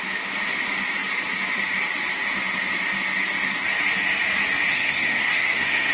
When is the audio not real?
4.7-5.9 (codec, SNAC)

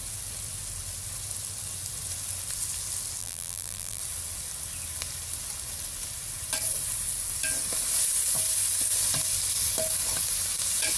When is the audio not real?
3.2-4.0 (vocoder, BigVGAN v2)

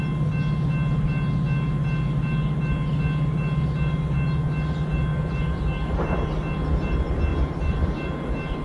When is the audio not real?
5.1-5.6 (vocoder, BigVGAN v2); 7.3-7.9

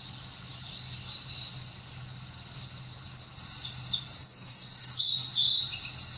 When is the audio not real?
4.2-5.6 (codec, DAC)

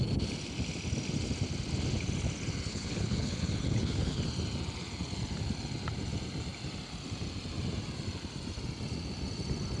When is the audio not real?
2.7-4.2 (codec, HILCodec)

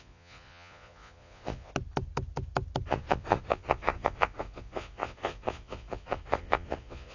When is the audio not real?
0.0-1.7 (vocoder, Vocos); 2.9-7.1

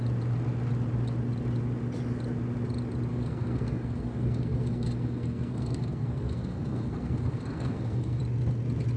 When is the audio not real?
3.1-8.2 (codec, SNAC)

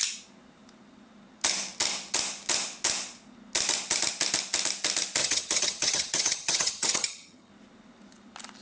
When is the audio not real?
5.2-7.5 (vocoder, HiFi-GAN)